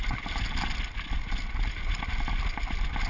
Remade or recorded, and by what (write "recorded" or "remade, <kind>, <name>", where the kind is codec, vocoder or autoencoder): recorded